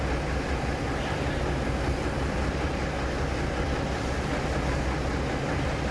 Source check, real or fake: real